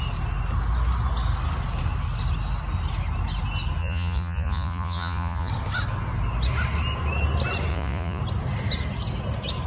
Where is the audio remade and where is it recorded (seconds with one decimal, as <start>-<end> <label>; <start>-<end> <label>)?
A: 0.0-3.8 recorded; 3.8-5.5 remade; 5.5-7.7 recorded; 7.7-8.2 remade; 8.2-9.7 recorded